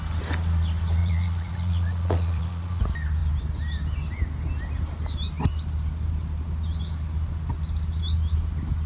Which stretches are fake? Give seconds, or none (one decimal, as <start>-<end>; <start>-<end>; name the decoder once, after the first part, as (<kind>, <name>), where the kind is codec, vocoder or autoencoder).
1.0-2.8 (vocoder, Vocos)